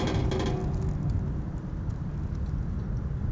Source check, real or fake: real